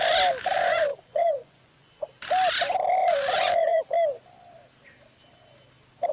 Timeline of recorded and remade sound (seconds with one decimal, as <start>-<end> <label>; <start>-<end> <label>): 0.0-0.9 recorded; 0.9-2.1 remade; 2.1-3.0 recorded; 3.0-3.8 remade; 3.8-6.1 recorded